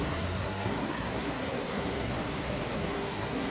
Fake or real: fake